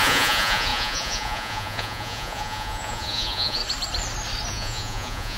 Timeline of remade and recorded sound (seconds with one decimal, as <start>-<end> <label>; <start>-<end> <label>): 0.0-3.6 remade; 3.6-4.5 recorded; 4.5-5.4 remade